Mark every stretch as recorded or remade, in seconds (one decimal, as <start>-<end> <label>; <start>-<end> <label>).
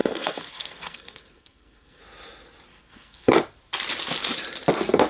0.0-2.0 remade; 2.0-2.7 recorded; 2.7-3.4 remade; 3.4-5.1 recorded